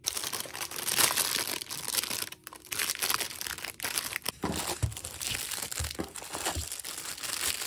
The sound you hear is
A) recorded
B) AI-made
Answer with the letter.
A